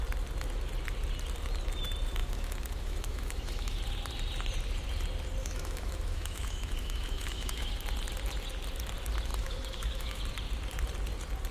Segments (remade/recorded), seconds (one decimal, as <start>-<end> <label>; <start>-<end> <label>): 0.0-2.2 recorded; 2.2-3.8 remade; 3.8-5.4 recorded; 5.4-7.7 remade; 7.7-9.3 recorded; 9.3-10.2 remade; 10.2-11.5 recorded